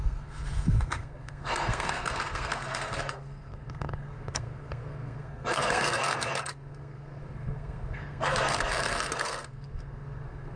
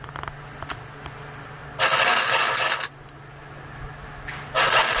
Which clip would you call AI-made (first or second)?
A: first